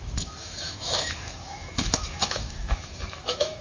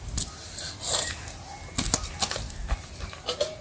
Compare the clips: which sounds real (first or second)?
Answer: second